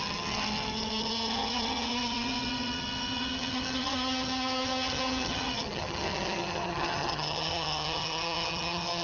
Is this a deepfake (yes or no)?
yes